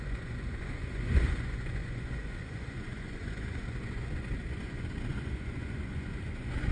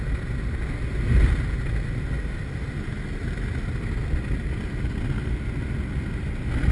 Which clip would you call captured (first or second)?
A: second